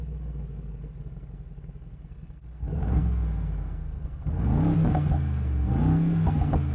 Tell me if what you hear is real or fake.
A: fake